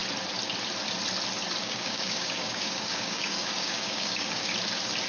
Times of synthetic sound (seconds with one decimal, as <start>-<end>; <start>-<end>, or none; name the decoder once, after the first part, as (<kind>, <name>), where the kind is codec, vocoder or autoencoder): 1.6-4.5 (codec, DAC)